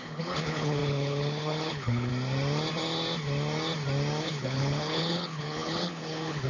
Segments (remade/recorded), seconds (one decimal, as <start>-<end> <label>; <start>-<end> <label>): 0.0-2.1 remade; 2.1-4.2 recorded; 4.2-6.5 remade